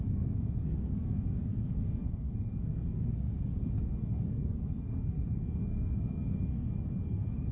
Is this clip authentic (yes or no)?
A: no